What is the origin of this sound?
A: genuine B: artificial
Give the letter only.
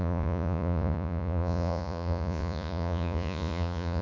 B